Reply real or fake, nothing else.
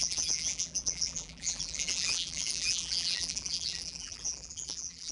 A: fake